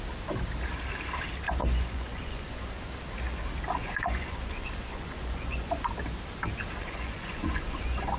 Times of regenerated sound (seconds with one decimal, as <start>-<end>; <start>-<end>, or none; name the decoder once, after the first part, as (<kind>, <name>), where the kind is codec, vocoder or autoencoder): 1.6-2.9 (vocoder, Vocos); 3.8-5.9; 6.8-8.2